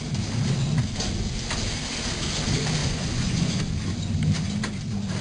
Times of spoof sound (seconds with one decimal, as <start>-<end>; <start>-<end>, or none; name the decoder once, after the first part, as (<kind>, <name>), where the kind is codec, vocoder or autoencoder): 2.8-3.6 (vocoder, Vocos)